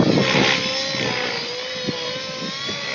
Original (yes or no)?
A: yes